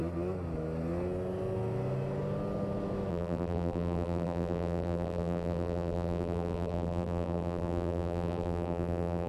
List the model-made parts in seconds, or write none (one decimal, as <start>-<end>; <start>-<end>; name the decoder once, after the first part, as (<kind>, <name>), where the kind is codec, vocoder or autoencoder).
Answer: 3.1-9.3 (vocoder, BigVGAN v2)